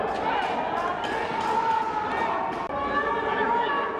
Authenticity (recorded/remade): recorded